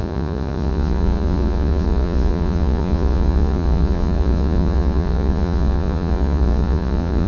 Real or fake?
fake